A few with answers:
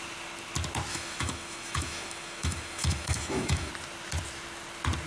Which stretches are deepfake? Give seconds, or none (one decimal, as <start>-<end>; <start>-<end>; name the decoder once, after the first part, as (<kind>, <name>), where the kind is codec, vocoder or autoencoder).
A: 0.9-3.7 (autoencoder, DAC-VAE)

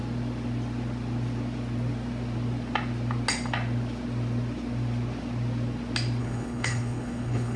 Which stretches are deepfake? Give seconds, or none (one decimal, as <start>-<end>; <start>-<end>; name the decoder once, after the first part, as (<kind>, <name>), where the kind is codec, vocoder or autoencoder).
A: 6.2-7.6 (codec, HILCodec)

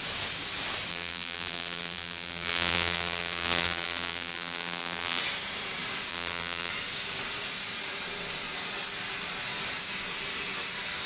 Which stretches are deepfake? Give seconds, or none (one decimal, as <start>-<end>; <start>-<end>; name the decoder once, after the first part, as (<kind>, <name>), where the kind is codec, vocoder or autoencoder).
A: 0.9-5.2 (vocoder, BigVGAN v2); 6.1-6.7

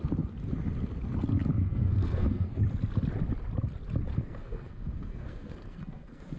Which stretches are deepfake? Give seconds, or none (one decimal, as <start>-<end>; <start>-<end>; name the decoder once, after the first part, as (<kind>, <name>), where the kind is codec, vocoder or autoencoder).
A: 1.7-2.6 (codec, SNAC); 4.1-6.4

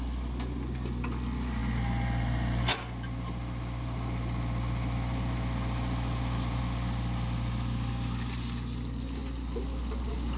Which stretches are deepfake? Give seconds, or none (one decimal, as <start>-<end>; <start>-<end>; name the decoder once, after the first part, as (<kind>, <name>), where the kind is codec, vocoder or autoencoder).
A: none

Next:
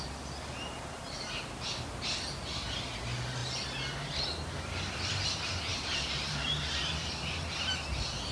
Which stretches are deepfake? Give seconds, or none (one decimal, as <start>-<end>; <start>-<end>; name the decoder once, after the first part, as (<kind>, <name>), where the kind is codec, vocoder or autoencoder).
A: 5.7-6.6 (vocoder, BigVGAN v2)

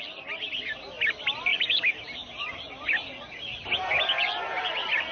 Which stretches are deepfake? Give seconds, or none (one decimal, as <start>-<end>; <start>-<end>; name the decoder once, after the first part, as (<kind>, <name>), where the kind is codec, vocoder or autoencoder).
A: none

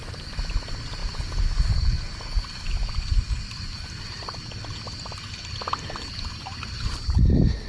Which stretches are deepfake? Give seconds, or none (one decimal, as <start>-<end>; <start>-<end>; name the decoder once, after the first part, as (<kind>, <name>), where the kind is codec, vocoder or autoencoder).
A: none